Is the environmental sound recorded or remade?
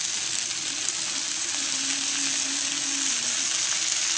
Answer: recorded